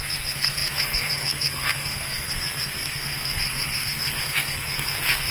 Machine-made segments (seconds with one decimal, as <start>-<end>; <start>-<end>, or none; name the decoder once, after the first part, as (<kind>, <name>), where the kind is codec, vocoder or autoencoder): 0.0-5.3 (codec, SNAC)